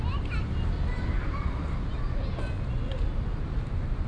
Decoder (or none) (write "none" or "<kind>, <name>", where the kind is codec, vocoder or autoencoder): none